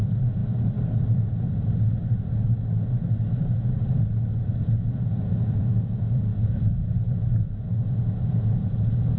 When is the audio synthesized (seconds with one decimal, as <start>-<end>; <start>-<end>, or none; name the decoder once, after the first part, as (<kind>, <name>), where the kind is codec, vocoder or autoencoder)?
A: 0.0-0.4 (vocoder, Vocos); 4.6-9.2